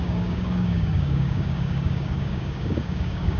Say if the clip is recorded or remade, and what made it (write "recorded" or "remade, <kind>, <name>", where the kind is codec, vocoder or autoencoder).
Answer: remade, codec, DAC